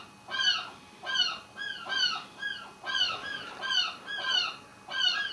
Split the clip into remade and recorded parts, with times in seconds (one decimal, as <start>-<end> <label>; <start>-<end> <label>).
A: 0.0-5.3 recorded